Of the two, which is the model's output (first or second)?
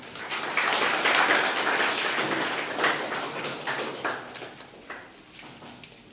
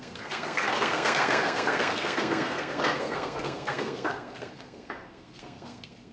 second